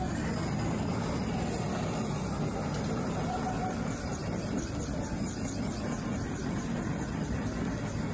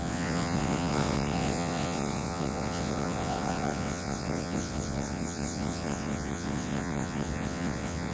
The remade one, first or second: second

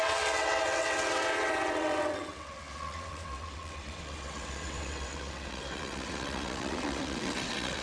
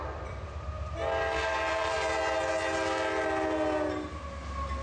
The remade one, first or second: first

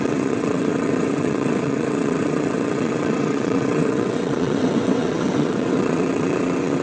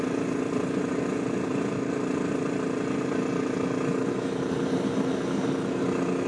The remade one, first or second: first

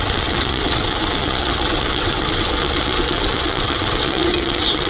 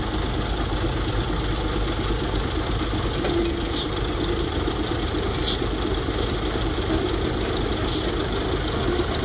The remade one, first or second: first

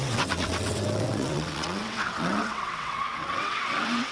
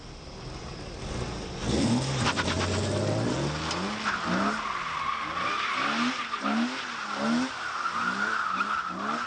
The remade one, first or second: first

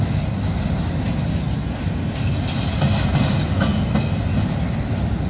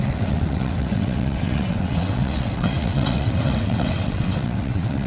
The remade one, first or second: second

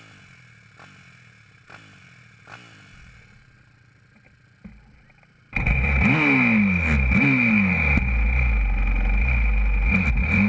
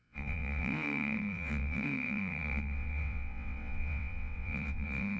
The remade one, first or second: second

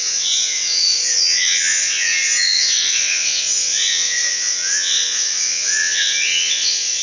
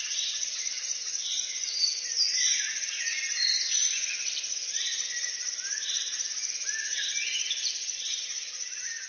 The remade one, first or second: first